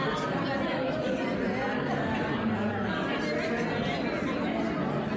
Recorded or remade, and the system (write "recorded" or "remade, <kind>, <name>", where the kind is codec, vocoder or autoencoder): recorded